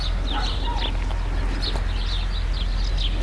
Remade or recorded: recorded